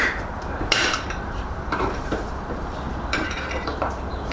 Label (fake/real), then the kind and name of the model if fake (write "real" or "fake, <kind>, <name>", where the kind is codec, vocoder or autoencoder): fake, vocoder, BigVGAN v2